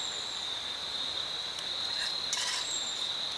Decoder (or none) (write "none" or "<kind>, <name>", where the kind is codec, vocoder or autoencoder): none